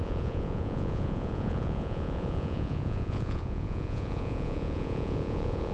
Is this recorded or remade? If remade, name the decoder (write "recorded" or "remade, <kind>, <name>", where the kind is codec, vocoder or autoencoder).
remade, vocoder, Vocos